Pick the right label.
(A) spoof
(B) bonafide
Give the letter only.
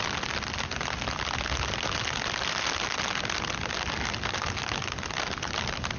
B